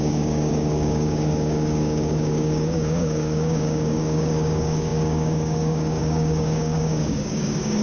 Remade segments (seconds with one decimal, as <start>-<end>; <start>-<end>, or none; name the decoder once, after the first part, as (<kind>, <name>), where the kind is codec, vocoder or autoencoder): 0.0-7.8 (codec, DAC)